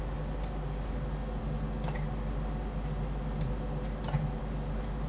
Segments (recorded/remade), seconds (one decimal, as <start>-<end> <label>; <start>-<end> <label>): 0.0-5.1 recorded